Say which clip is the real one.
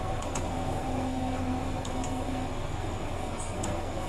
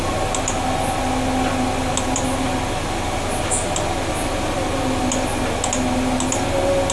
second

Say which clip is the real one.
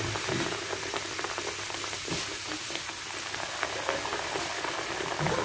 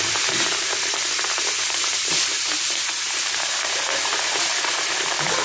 first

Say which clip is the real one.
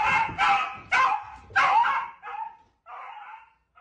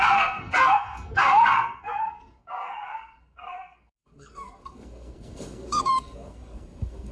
first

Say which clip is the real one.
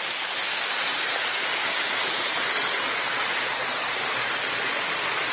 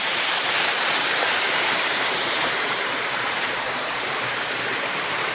first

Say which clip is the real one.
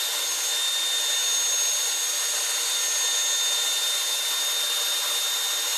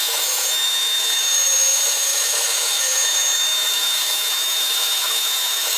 first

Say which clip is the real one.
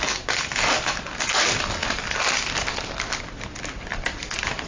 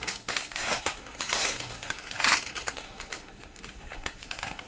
first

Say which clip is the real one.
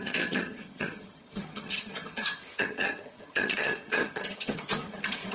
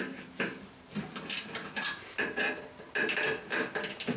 second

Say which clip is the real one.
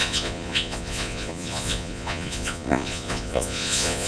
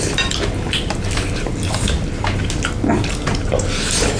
second